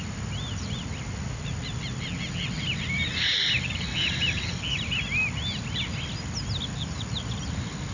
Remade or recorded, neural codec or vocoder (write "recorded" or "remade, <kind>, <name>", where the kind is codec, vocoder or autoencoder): recorded